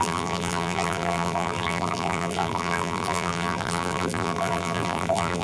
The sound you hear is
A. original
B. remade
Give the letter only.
B